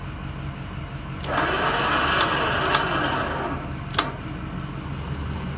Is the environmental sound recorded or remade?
recorded